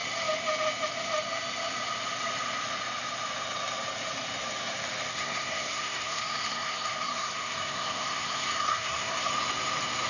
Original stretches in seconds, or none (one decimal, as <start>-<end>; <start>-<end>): 0.0-5.1; 9.3-10.1